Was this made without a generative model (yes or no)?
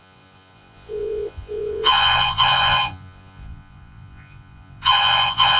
no